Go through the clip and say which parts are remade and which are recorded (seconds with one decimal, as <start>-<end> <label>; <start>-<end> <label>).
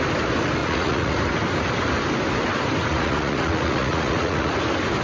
0.0-0.6 recorded; 0.6-1.2 remade; 1.2-2.9 recorded; 2.9-4.5 remade; 4.5-5.0 recorded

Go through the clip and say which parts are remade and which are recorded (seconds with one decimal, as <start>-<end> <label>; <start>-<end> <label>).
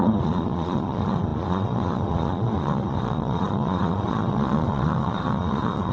0.0-5.9 remade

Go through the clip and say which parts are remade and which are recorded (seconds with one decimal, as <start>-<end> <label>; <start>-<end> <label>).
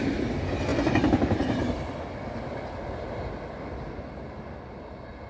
0.0-5.3 recorded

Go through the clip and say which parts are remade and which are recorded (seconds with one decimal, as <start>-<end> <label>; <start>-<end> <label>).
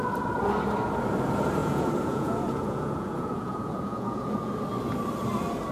0.0-1.6 recorded; 1.6-4.5 remade; 4.5-5.7 recorded